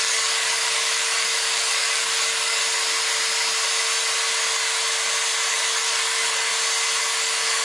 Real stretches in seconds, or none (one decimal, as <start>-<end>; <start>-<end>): 2.6-5.5; 6.5-7.0